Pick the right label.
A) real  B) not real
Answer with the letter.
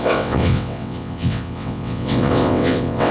B